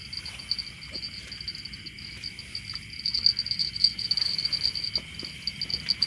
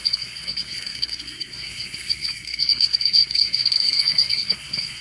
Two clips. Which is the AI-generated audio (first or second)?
second